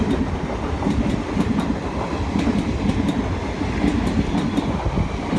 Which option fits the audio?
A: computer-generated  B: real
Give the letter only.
B